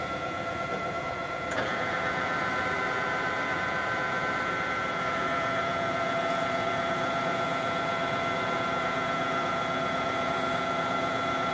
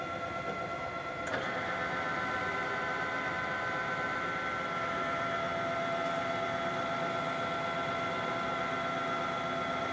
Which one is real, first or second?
second